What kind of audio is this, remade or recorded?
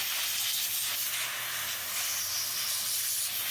recorded